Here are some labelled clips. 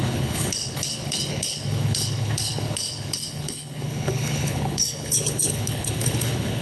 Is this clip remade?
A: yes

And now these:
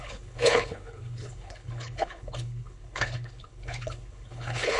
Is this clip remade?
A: yes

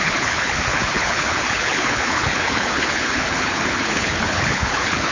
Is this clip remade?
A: yes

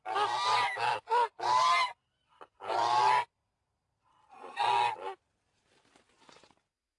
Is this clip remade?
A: no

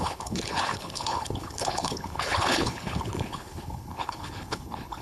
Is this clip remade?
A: yes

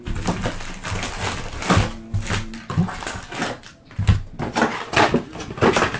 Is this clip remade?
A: no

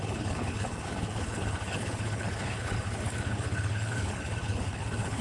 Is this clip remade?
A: yes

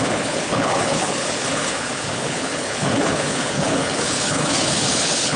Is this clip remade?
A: yes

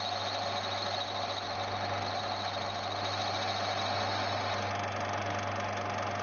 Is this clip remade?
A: no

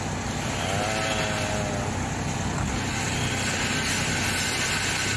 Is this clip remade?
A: no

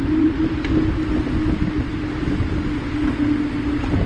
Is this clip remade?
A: no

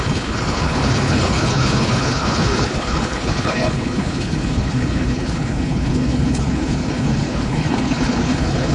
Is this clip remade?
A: yes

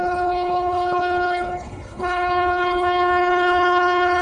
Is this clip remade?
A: yes